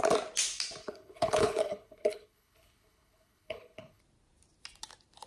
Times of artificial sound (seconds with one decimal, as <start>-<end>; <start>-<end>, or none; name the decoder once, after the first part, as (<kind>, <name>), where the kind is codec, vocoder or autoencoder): 0.8-4.0 (codec, HILCodec)